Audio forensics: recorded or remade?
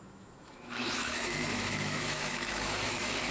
remade